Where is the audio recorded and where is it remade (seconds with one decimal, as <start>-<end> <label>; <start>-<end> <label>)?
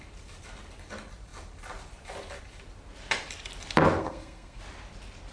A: 0.0-4.0 recorded; 4.0-4.6 remade; 4.6-5.3 recorded